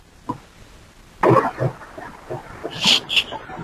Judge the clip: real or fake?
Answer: real